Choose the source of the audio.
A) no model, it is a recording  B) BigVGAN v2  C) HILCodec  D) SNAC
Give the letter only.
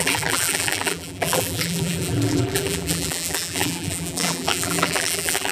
B